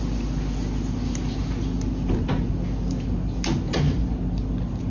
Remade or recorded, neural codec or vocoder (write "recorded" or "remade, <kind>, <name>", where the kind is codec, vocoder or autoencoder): recorded